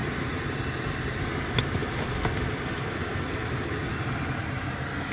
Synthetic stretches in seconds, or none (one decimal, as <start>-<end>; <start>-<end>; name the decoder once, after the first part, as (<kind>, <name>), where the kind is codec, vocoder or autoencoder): none